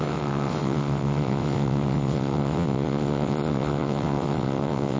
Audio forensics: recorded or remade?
remade